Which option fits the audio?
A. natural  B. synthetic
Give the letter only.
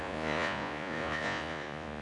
B